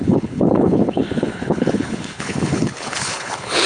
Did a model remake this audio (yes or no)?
yes